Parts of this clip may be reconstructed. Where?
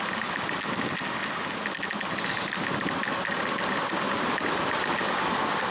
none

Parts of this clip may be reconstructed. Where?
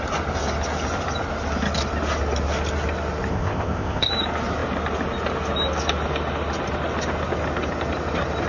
3.3-4.1 (codec, ZipCodec)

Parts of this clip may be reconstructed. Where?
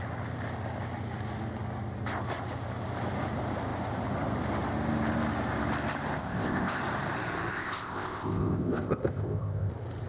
6.2-6.8 (codec, ZipCodec); 7.5-9.7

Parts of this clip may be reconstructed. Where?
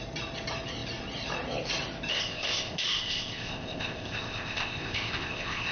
2.1-5.7 (codec, ZipCodec)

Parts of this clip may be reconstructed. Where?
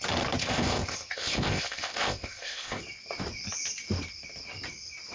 0.4-2.8 (codec, ZipCodec)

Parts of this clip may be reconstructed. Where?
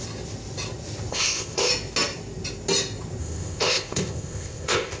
1.1-1.7 (codec, ZipCodec); 3.2-5.0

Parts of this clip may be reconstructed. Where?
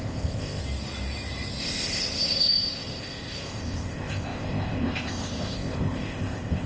0.0-0.6 (codec, ZipCodec); 1.6-6.7